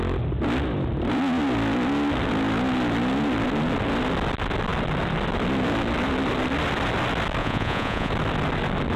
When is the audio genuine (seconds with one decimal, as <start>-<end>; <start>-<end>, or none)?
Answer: 0.0-7.4; 8.1-9.0

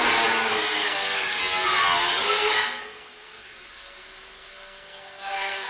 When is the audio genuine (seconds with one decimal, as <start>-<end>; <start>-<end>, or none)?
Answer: 0.0-0.5; 1.4-2.2